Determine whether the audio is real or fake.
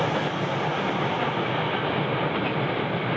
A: real